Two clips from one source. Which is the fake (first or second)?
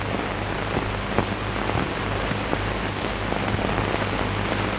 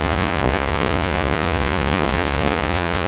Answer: second